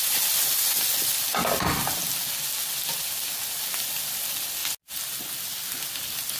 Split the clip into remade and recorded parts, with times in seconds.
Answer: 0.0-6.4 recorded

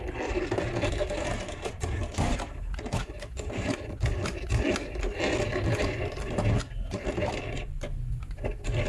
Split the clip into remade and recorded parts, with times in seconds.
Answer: 0.0-8.9 recorded

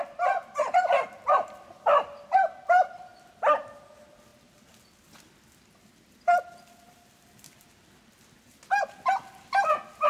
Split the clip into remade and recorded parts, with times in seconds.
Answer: 0.0-10.1 recorded

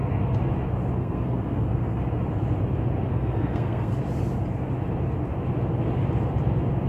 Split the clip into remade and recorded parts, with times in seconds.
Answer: 0.0-1.0 recorded; 1.0-2.0 remade; 2.0-3.1 recorded; 3.1-4.0 remade; 4.0-6.9 recorded

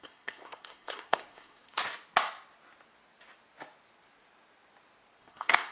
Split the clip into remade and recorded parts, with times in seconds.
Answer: 0.0-1.8 remade; 1.8-5.2 recorded; 5.2-5.7 remade

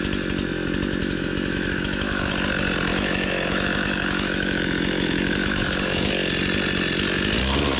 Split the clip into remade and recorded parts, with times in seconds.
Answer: 0.0-1.0 recorded; 1.0-2.3 remade; 2.3-2.9 recorded; 2.9-6.1 remade; 6.1-7.8 recorded